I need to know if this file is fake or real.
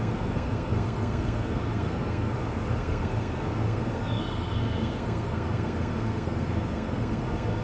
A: fake